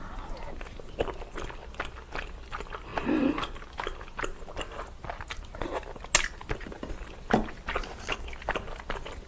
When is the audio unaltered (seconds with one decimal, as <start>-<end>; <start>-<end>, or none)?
0.0-9.3